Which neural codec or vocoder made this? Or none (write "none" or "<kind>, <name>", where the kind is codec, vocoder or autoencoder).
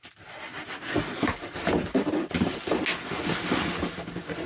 none